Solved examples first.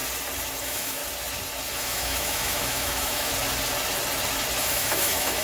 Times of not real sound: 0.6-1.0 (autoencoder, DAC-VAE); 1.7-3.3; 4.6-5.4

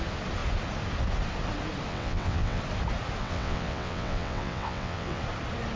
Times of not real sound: 1.9-2.6 (vocoder, WaveNeXt); 3.2-5.2